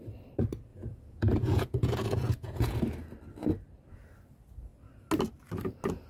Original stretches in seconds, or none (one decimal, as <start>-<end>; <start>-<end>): 0.0-0.7; 2.8-6.1